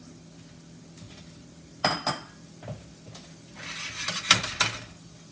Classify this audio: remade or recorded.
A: recorded